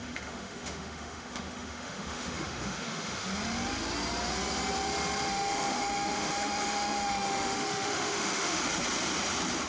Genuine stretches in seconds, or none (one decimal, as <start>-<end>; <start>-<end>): 3.3-5.3; 8.6-9.7